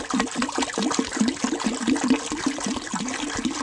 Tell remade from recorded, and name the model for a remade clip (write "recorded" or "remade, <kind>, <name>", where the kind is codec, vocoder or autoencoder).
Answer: recorded